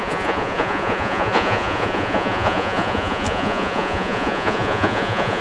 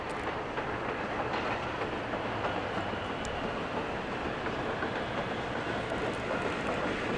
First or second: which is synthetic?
first